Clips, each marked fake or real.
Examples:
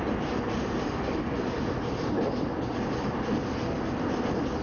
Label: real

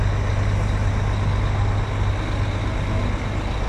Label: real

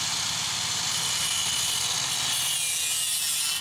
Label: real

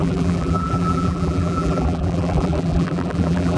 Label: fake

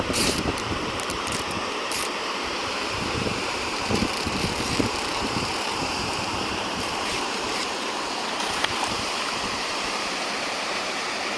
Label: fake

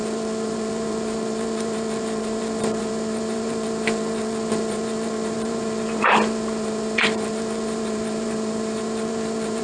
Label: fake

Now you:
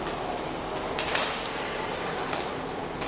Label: real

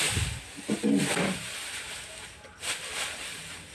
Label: real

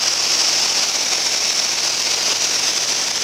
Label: real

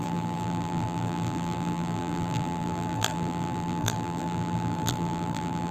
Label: fake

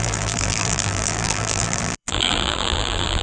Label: fake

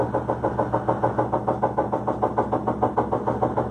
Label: real